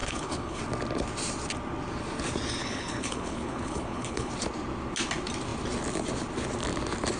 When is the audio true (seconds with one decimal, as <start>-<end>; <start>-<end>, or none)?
0.6-2.6; 4.3-7.2